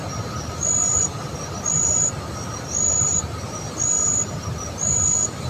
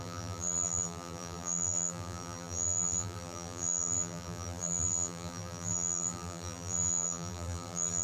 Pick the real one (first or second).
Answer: first